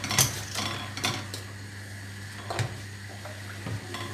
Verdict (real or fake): real